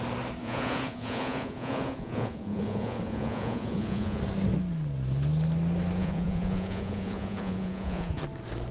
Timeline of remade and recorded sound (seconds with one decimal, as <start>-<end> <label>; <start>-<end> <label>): 0.0-0.4 recorded; 0.4-4.2 remade; 4.2-6.0 recorded; 6.0-8.2 remade; 8.2-8.7 recorded